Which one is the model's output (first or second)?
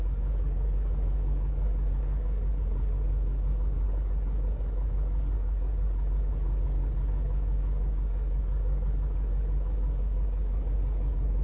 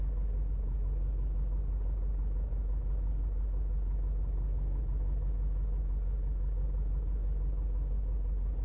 first